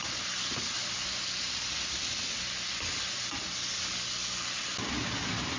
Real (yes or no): yes